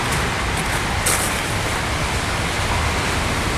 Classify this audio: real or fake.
real